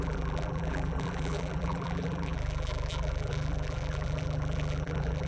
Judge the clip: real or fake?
fake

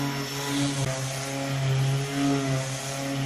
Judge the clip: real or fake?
real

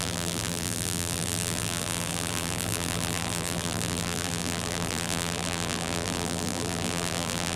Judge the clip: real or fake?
fake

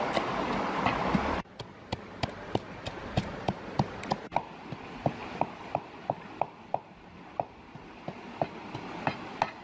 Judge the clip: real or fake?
real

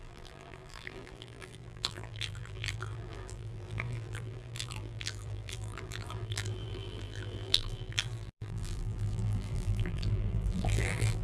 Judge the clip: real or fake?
fake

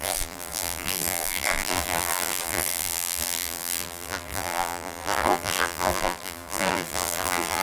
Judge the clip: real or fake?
fake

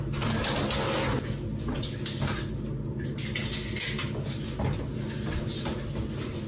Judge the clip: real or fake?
real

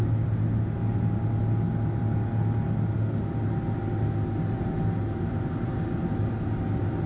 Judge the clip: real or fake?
real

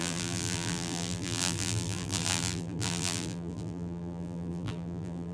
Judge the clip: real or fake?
fake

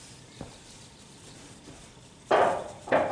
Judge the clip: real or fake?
fake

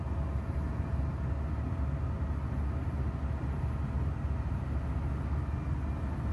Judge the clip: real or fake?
real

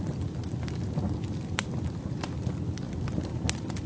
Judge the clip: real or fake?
real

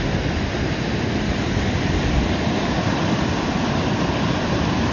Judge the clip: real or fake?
fake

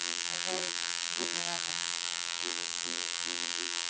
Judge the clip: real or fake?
fake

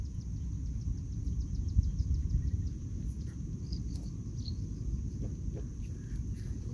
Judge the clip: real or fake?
real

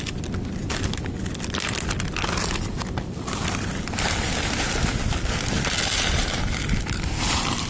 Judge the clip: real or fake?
fake